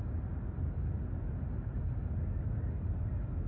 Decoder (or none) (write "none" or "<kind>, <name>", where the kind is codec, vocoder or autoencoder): none